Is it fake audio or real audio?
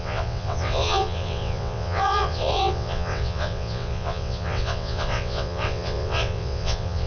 fake